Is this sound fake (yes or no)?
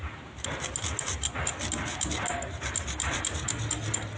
no